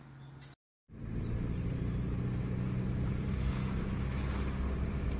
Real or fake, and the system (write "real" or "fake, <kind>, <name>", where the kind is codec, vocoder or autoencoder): real